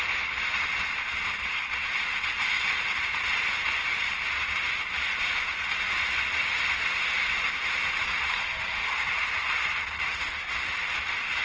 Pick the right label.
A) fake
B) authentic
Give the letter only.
B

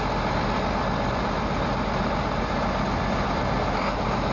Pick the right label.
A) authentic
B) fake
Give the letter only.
A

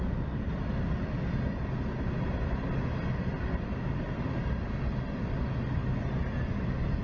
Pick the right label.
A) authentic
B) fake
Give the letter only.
A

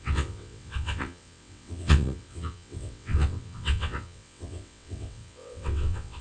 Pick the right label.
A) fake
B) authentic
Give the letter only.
A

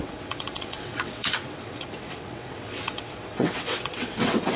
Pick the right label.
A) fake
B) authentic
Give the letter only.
A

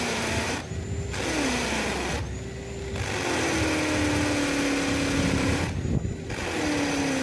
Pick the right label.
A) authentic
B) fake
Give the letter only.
A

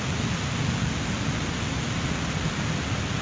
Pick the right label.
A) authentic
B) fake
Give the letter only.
A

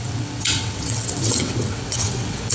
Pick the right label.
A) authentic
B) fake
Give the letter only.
B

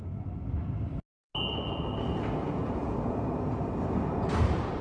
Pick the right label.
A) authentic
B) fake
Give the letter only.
A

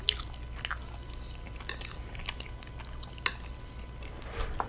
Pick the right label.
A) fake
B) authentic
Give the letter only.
B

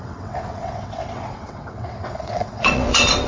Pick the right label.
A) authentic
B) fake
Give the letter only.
B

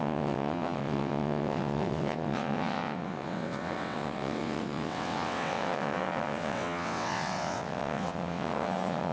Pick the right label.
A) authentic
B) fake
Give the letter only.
B